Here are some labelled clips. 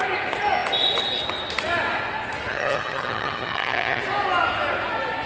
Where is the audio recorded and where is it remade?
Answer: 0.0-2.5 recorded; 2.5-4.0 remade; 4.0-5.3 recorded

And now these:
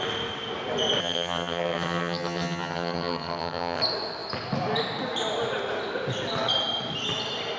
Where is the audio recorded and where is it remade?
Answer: 0.0-1.0 recorded; 1.0-3.8 remade; 3.8-7.6 recorded

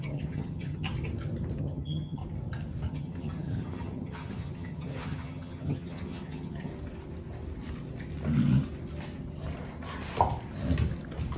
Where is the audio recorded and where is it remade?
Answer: 0.0-0.9 remade; 0.9-1.6 recorded; 1.6-2.2 remade; 2.2-2.9 recorded; 2.9-6.7 remade; 6.7-11.4 recorded

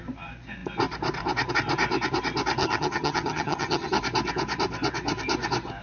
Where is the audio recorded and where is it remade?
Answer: 0.0-2.6 recorded; 2.6-4.0 remade; 4.0-5.8 recorded

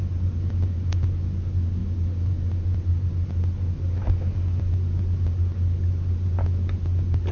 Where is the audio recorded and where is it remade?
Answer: 0.0-7.3 recorded

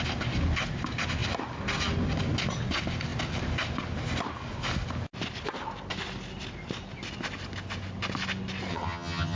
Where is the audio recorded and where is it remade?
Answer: 0.0-8.7 recorded; 8.7-9.4 remade